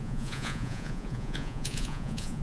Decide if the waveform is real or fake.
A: fake